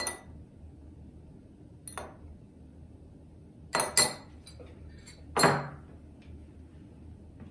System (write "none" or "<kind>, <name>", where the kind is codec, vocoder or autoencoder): none